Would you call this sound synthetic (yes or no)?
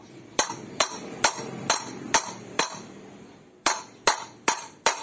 yes